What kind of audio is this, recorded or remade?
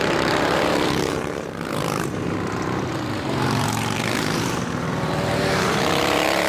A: remade